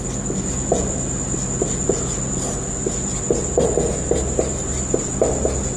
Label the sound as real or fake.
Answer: real